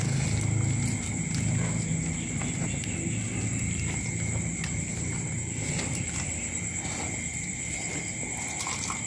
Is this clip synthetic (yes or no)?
no